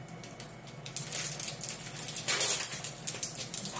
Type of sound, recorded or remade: recorded